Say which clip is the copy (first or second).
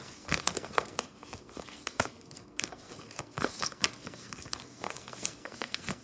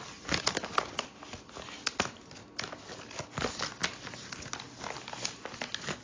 first